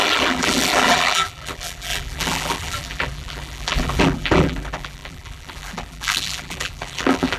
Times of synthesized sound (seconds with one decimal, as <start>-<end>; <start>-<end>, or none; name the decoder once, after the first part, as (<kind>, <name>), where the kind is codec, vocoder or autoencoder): 0.0-7.4 (vocoder, BigVGAN v2)